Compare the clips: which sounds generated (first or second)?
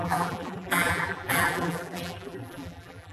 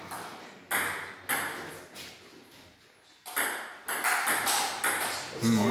first